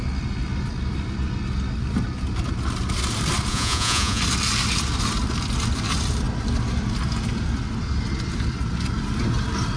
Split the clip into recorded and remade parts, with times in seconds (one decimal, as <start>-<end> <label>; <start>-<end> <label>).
0.0-3.5 recorded; 3.5-4.2 remade; 4.2-9.8 recorded